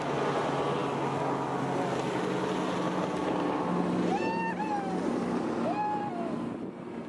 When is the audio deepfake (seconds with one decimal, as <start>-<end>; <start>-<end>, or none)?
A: none